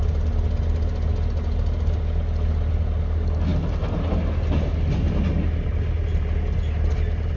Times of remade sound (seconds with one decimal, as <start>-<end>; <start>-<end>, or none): none